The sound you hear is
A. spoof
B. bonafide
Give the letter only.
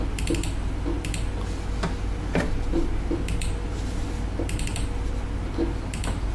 B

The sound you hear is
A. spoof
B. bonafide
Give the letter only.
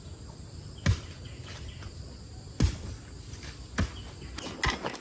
B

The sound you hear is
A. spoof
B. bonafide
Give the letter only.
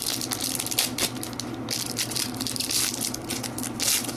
B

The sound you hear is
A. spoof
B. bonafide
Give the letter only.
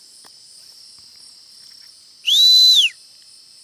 B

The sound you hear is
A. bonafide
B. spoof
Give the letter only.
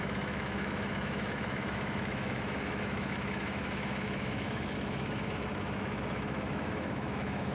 B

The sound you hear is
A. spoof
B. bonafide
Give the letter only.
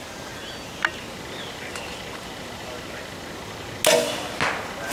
B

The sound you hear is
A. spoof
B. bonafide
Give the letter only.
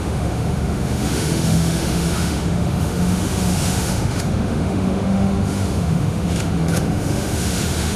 A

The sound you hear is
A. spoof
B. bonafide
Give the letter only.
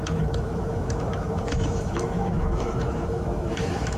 A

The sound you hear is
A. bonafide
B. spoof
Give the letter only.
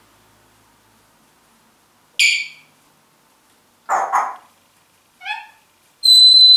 A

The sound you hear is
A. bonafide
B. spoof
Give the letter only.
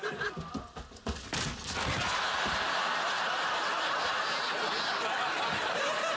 A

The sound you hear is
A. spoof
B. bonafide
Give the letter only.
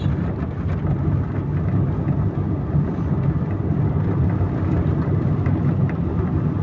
B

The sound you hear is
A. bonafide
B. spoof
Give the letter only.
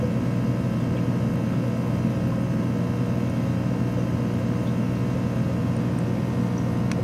A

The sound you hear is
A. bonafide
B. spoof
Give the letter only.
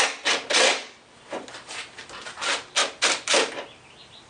A